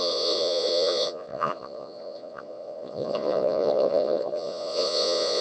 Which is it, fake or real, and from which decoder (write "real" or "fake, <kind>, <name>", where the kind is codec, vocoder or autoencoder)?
fake, vocoder, Vocos